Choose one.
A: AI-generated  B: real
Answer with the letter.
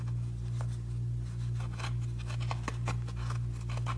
B